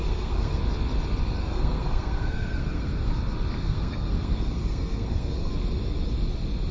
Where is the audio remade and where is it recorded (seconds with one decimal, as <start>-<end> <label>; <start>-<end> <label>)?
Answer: 0.0-0.6 remade; 0.6-1.4 recorded; 1.4-3.1 remade; 3.1-3.6 recorded; 3.6-5.5 remade; 5.5-6.7 recorded